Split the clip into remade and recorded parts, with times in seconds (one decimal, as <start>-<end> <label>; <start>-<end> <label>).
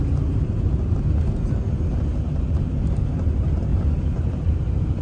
0.0-3.7 recorded; 3.7-5.0 remade